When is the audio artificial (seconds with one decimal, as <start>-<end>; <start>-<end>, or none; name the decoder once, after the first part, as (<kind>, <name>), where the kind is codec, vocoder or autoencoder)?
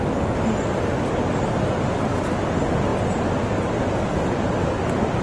none